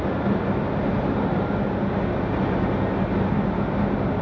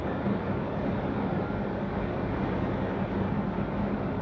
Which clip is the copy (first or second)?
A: second